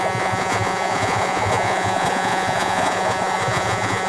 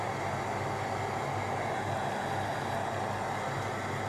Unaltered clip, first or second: second